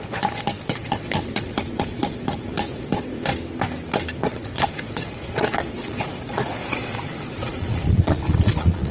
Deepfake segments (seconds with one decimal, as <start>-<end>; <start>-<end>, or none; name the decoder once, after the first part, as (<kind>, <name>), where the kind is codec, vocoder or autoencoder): 0.0-3.3 (vocoder, Vocos); 4.2-8.9

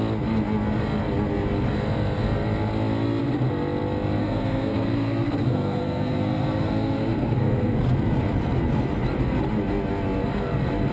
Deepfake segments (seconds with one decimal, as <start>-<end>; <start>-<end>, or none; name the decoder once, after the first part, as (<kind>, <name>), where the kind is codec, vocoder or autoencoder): 4.2-7.9 (codec, SNAC)

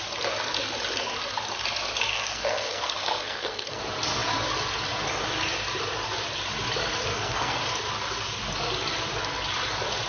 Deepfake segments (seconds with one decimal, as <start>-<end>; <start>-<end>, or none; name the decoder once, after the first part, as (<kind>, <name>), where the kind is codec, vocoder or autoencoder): 2.1-3.8 (codec, SNAC); 7.1-7.6

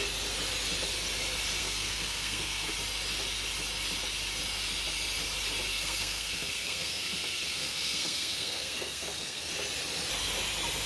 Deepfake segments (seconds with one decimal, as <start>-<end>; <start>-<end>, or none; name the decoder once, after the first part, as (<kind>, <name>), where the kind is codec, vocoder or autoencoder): 1.6-2.7 (codec, SNAC); 5.7-9.5